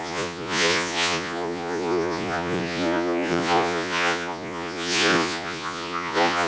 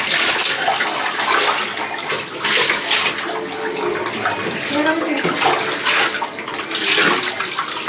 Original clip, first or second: second